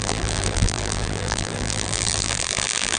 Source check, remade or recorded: remade